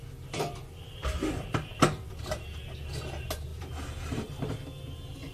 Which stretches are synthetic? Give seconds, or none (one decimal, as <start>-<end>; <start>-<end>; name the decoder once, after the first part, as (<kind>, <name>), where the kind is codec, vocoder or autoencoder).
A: 3.5-4.5 (vocoder, BigVGAN v2)